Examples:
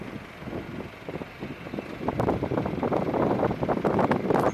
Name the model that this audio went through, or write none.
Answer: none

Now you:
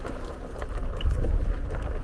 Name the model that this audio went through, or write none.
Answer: none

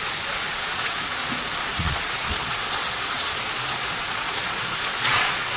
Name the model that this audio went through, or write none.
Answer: vocoder, Vocos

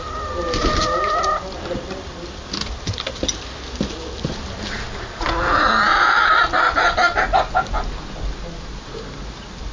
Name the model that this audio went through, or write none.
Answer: none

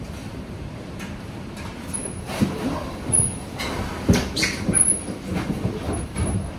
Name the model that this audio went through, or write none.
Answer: vocoder, BigVGAN v2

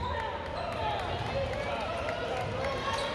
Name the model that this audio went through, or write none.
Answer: none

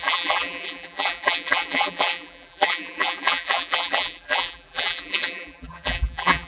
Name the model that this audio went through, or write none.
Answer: vocoder, BigVGAN v2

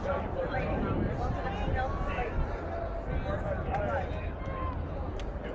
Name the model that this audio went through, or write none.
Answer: none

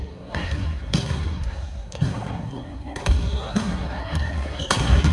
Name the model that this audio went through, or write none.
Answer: codec, SNAC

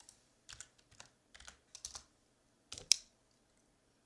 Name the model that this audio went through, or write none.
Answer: none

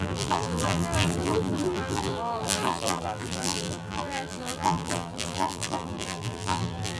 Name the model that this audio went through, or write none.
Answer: vocoder, BigVGAN v2